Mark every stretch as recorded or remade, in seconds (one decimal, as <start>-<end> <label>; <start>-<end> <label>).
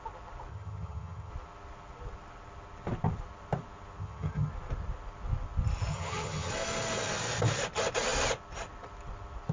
0.0-0.5 recorded; 0.5-1.3 remade; 1.3-4.0 recorded; 4.0-4.5 remade; 4.5-5.9 recorded; 5.9-6.5 remade; 6.5-9.5 recorded